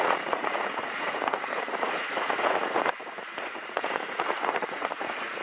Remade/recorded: remade